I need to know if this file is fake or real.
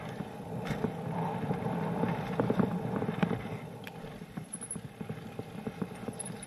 fake